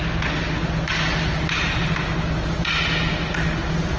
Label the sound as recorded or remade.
recorded